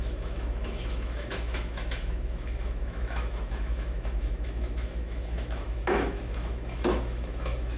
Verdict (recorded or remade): remade